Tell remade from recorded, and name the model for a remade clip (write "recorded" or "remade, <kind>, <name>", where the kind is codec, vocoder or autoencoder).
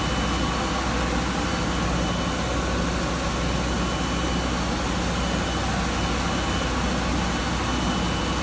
recorded